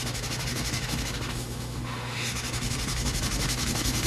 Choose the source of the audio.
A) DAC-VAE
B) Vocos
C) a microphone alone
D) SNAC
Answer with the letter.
A